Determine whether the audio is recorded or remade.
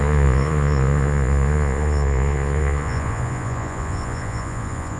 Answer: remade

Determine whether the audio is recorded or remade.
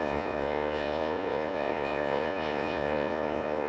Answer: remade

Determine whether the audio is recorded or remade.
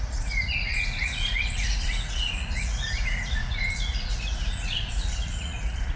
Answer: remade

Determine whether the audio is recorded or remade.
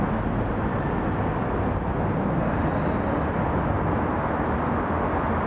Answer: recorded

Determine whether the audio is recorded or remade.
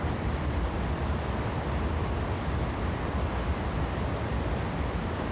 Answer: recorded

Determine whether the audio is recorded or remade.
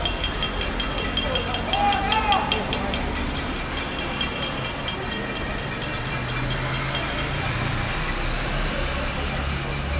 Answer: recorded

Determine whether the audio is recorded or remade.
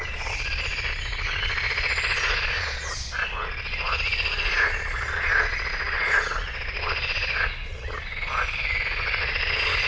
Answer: remade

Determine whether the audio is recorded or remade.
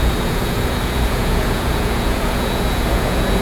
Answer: remade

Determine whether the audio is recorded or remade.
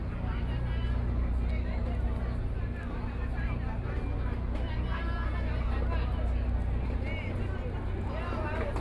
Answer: recorded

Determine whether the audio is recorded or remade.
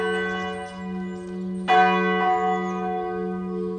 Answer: recorded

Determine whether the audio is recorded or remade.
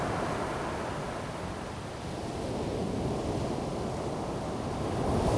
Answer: recorded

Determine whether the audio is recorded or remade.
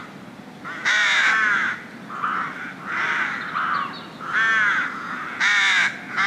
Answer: recorded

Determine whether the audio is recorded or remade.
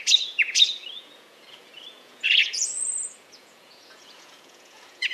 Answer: remade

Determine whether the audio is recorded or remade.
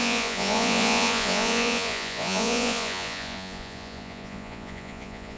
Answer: remade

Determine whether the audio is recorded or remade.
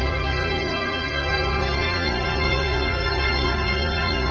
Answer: remade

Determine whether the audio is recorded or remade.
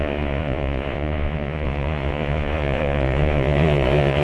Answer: remade